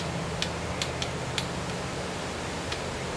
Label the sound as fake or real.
real